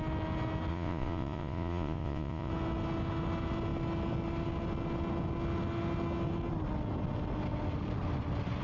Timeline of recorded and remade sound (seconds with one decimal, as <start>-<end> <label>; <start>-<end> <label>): 0.0-0.7 recorded; 0.7-2.5 remade; 2.5-8.6 recorded